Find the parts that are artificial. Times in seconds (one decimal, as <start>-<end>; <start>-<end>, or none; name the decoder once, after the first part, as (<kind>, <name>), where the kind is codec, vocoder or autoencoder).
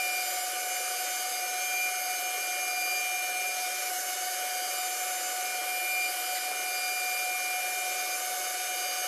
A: 3.3-4.0 (autoencoder, DAC-VAE)